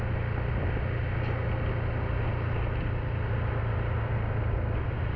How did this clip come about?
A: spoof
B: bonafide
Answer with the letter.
B